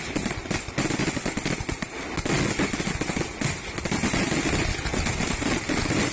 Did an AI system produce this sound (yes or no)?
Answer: no